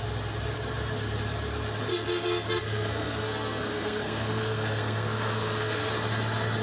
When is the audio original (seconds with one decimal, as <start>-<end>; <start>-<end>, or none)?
0.0-1.9; 5.9-6.6